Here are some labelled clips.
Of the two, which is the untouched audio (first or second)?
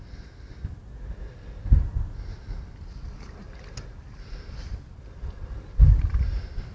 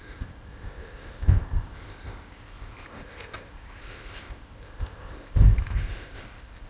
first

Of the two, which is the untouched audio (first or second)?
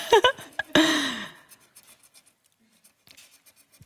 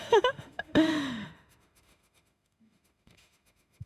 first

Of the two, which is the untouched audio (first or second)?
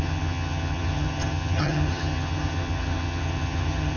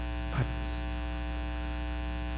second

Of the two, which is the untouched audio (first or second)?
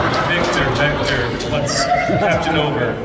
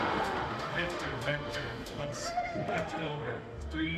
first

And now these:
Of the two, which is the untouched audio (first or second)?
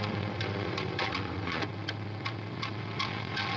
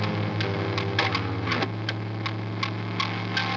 second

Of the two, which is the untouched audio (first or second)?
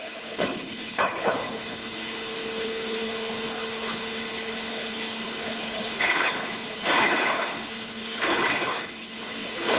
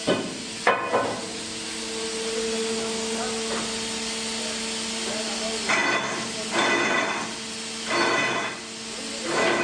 second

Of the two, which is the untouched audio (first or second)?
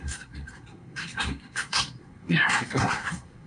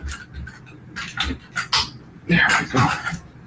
second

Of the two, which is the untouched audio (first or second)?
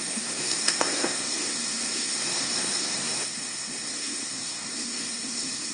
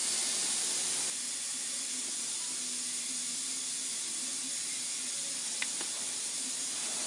second